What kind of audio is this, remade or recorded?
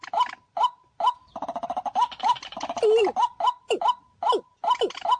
recorded